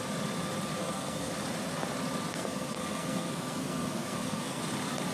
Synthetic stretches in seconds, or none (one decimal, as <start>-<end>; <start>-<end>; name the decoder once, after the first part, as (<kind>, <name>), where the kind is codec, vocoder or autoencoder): 0.8-1.3 (codec, SNAC); 2.3-4.6